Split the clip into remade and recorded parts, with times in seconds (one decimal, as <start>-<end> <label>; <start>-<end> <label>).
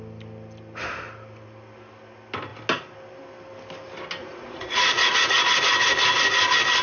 0.0-4.2 recorded; 4.2-5.4 remade; 5.4-6.8 recorded